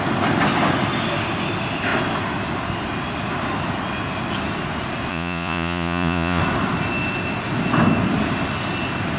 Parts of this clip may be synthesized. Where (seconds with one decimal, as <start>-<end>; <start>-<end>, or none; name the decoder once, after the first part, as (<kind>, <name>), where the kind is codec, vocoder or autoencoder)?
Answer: 5.1-6.4 (vocoder, Vocos)